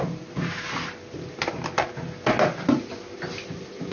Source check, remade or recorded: recorded